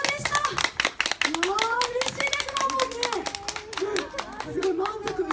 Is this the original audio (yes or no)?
yes